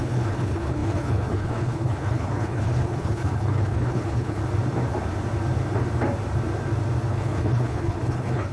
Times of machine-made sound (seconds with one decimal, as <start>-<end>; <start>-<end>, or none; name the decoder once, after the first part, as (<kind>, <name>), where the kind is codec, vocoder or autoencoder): 0.0-4.4 (codec, HILCodec); 7.1-8.5